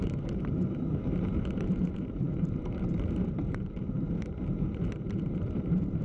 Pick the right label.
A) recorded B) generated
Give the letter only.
B